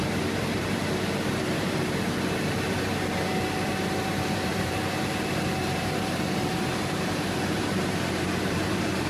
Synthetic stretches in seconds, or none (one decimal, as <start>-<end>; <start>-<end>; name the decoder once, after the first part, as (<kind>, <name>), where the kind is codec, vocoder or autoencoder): 0.0-9.1 (vocoder, BigVGAN v2)